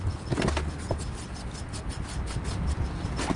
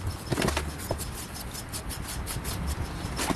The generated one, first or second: second